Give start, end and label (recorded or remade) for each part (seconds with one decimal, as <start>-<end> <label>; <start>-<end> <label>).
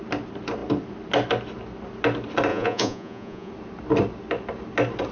0.0-2.5 recorded; 2.5-3.5 remade; 3.5-5.1 recorded